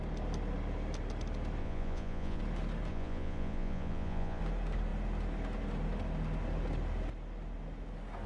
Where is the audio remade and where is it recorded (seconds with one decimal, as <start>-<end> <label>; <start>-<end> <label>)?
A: 0.0-1.6 recorded; 1.6-2.4 remade; 2.4-2.9 recorded; 2.9-4.4 remade; 4.4-8.3 recorded